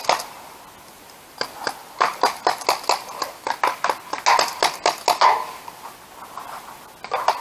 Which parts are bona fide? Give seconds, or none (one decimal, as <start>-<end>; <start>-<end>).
0.0-7.4